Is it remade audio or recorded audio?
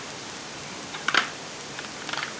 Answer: recorded